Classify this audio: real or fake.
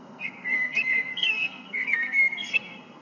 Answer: fake